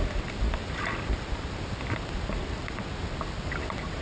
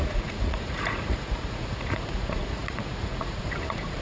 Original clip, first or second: first